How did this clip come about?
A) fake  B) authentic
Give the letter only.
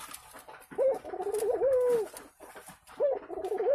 B